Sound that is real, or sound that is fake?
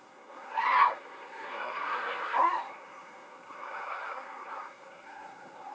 fake